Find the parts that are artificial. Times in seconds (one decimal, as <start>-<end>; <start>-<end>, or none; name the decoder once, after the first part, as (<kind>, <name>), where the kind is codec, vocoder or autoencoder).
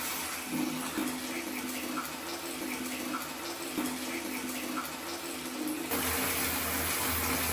none